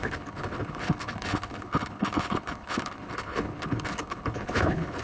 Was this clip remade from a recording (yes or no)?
yes